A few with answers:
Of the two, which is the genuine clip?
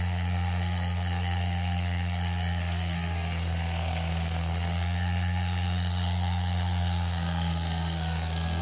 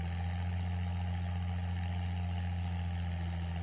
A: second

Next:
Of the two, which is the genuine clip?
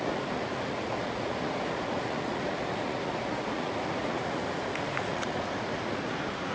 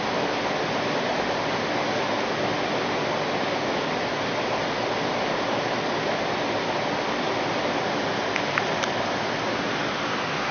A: second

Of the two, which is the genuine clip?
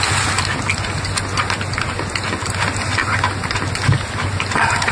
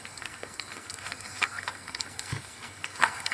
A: first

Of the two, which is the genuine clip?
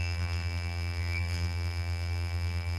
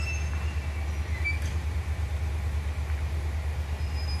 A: second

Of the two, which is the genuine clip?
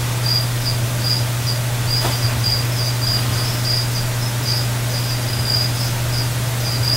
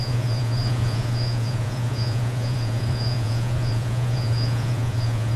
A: first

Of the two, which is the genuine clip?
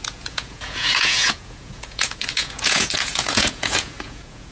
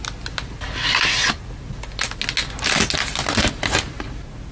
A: second